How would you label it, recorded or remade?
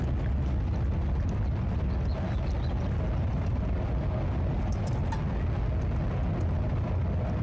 recorded